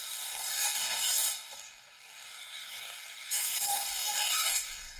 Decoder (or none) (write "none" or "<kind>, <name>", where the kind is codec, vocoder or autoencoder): codec, DAC